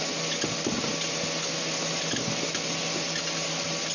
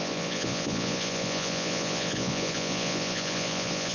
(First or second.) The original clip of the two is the first